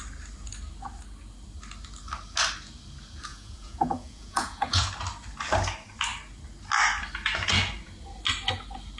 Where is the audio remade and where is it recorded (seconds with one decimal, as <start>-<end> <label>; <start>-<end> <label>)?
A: 0.0-3.3 recorded; 3.3-4.9 remade; 4.9-9.0 recorded

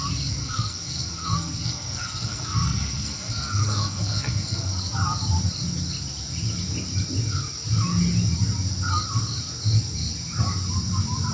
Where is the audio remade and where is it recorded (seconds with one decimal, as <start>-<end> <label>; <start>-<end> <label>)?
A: 0.0-0.4 recorded; 0.4-4.8 remade; 4.8-11.3 recorded

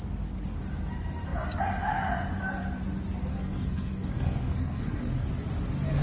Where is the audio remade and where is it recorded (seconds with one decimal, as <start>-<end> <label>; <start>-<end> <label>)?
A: 0.0-3.3 recorded; 3.3-5.3 remade; 5.3-6.0 recorded

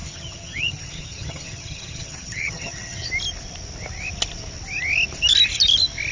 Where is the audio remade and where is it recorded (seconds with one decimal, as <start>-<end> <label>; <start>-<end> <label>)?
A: 0.0-3.1 remade; 3.1-6.1 recorded

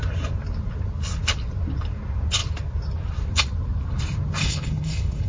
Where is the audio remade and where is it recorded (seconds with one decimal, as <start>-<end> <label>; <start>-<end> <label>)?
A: 0.0-4.4 recorded; 4.4-5.3 remade

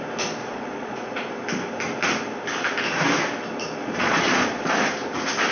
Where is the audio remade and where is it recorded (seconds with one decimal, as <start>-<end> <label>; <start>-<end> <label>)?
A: 0.0-0.4 recorded; 0.4-1.3 remade; 1.3-3.8 recorded; 3.8-4.7 remade; 4.7-5.5 recorded

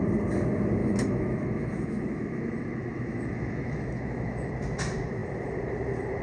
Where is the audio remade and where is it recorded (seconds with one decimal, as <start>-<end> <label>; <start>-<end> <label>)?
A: 0.0-0.8 recorded; 0.8-4.5 remade; 4.5-6.2 recorded

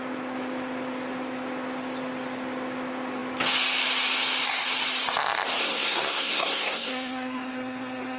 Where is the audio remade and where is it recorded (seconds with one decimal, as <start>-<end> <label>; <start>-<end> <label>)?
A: 0.0-5.6 recorded; 5.6-8.2 remade